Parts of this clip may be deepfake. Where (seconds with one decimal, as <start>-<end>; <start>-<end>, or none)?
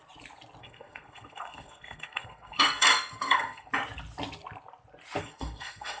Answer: 0.6-3.7; 5.2-6.0